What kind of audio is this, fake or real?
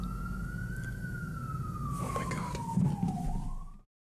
real